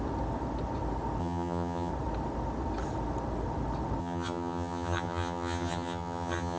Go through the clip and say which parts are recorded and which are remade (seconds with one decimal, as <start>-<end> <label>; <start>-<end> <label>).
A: 0.0-1.2 recorded; 1.2-1.9 remade; 1.9-4.0 recorded; 4.0-6.6 remade